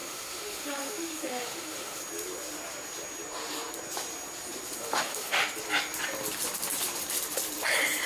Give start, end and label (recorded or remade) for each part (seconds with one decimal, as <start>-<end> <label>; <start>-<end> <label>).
0.0-2.0 remade; 2.0-4.8 recorded; 4.8-5.4 remade; 5.4-8.1 recorded